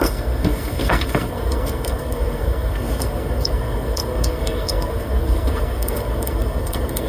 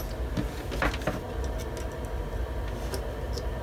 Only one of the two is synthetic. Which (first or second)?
first